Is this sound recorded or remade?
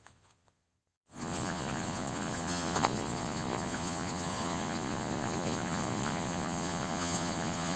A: remade